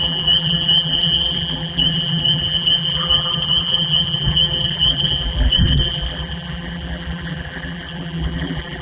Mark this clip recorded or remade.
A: remade